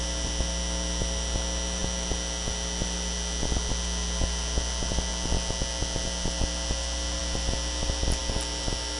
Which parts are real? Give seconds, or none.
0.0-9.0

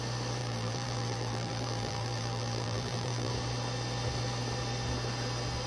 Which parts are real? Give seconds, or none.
0.0-0.4; 3.3-5.7

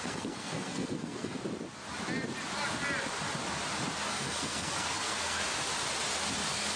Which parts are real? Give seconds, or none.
1.4-4.1; 5.4-6.8